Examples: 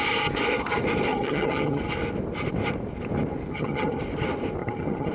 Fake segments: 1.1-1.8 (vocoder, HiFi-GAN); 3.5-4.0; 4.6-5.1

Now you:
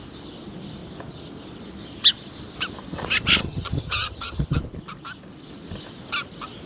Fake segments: 3.4-4.6 (vocoder, HiFi-GAN)

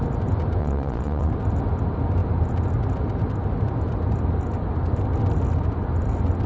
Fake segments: 0.6-1.3 (vocoder, Vocos)

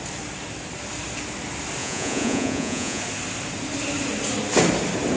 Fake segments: 1.8-3.0 (vocoder, Vocos)

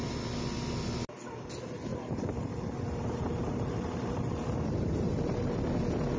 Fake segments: 1.9-5.6 (vocoder, BigVGAN v2)